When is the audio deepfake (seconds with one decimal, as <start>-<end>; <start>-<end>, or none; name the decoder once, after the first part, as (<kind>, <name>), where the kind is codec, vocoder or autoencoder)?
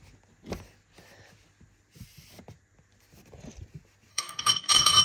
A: 4.1-5.0 (codec, DAC)